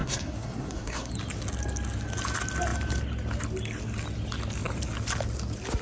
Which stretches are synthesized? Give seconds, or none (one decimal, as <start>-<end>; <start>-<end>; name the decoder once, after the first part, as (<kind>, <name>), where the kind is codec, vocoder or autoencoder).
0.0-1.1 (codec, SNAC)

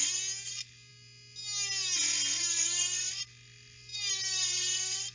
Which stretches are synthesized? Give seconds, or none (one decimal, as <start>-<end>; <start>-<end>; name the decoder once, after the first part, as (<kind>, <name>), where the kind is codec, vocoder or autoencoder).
none

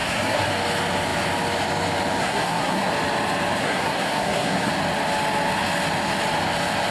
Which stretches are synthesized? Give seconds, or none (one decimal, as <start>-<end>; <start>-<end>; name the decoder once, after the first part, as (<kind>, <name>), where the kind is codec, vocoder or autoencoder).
0.0-0.5 (codec, SNAC); 2.2-2.9; 3.6-4.7

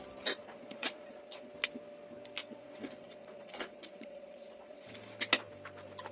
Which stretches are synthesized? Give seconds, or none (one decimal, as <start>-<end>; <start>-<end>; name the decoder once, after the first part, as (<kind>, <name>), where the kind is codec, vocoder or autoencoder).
0.4-1.5 (vocoder, Vocos); 2.4-4.9